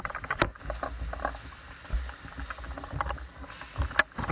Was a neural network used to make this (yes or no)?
no